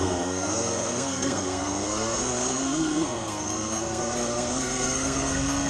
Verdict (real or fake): fake